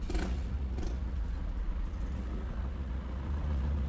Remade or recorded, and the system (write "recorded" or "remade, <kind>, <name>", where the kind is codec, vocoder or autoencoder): remade, vocoder, Vocos